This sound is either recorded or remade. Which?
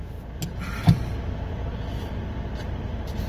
recorded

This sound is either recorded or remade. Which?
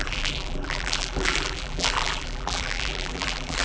remade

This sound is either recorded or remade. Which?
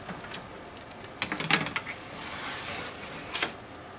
recorded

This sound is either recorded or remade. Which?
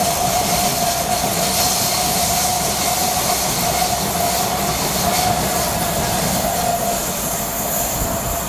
recorded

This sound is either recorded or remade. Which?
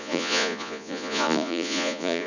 remade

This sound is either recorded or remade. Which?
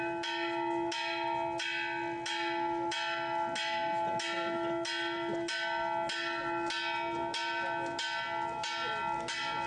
recorded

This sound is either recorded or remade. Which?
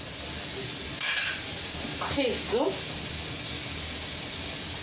recorded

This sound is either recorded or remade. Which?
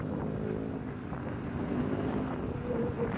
recorded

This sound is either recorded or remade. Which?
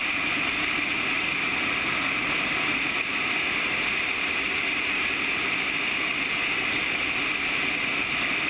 recorded